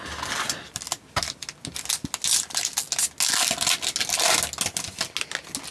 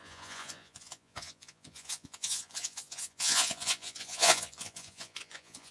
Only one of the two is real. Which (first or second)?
first